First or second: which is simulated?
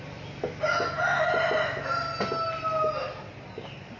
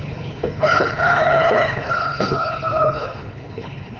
second